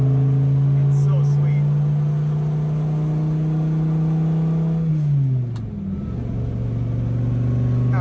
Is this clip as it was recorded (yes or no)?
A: yes